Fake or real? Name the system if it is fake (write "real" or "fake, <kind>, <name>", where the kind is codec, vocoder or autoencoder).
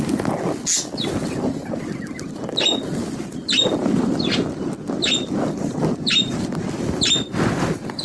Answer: real